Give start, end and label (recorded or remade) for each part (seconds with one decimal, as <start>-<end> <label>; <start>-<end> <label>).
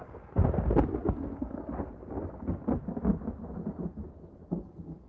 0.0-0.4 remade; 0.4-1.1 recorded; 1.1-1.6 remade; 1.6-4.5 recorded; 4.5-5.1 remade